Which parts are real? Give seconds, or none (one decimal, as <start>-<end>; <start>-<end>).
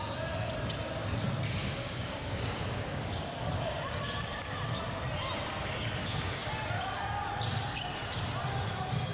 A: 0.0-1.6; 3.7-6.0; 6.5-9.1